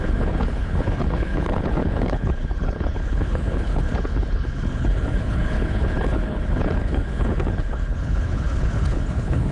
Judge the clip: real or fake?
fake